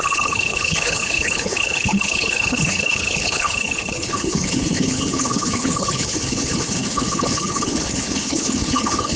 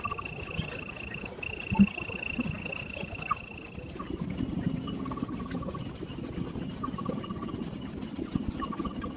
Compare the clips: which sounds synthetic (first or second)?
first